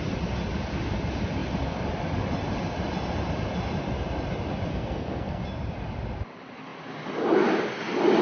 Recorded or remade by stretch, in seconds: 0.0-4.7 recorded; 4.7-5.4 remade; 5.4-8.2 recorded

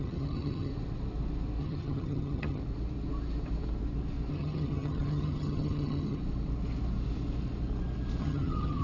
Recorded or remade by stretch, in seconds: 0.0-0.7 remade; 0.7-1.6 recorded; 1.6-2.6 remade; 2.6-4.3 recorded; 4.3-6.2 remade; 6.2-8.2 recorded; 8.2-8.8 remade

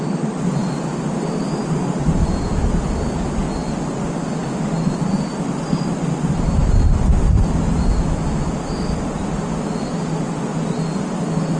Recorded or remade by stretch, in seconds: 0.0-11.6 recorded

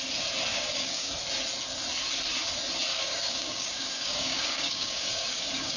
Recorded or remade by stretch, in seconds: 0.0-0.5 recorded; 0.5-1.1 remade; 1.1-2.9 recorded; 2.9-5.8 remade

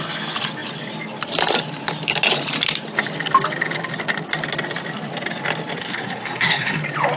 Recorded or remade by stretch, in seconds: 0.0-5.8 recorded; 5.8-6.8 remade; 6.8-7.2 recorded